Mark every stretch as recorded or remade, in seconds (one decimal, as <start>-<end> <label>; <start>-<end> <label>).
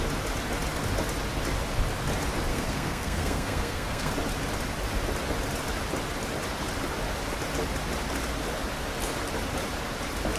0.0-2.5 recorded; 2.5-4.1 remade; 4.1-10.4 recorded